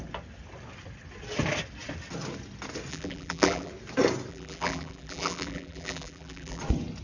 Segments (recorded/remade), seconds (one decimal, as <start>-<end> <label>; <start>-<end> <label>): 0.0-2.9 recorded; 2.9-3.7 remade; 3.7-4.3 recorded; 4.3-6.6 remade; 6.6-7.0 recorded